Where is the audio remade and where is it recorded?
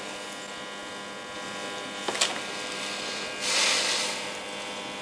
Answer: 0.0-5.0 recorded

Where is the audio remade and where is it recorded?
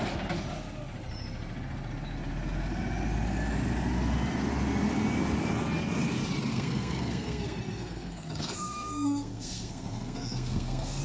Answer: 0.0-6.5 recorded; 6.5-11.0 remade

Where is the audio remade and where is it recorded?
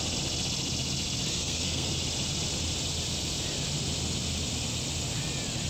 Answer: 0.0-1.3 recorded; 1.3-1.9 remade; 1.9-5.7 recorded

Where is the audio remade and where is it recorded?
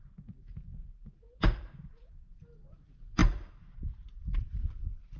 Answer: 0.0-5.2 recorded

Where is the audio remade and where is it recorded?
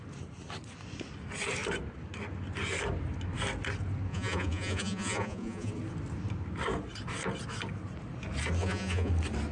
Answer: 0.0-4.1 recorded; 4.1-5.7 remade; 5.7-8.6 recorded; 8.6-9.1 remade; 9.1-9.5 recorded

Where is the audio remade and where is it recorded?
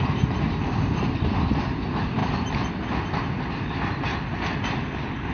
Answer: 0.0-5.3 recorded